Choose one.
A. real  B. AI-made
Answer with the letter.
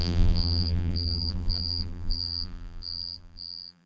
B